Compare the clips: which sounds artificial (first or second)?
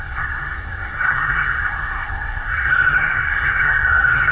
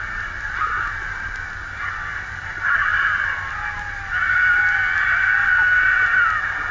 first